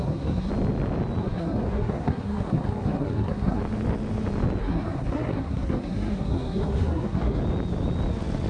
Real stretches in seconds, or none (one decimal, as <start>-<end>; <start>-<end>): 0.5-1.2; 3.6-4.6; 7.4-8.5